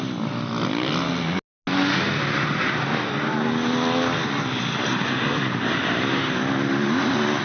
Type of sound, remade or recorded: recorded